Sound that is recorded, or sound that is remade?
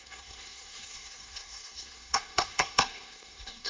remade